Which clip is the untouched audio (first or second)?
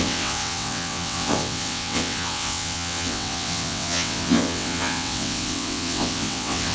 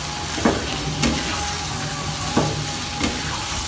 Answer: second